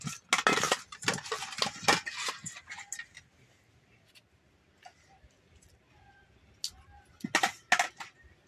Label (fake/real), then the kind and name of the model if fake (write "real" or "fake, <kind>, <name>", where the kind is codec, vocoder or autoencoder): real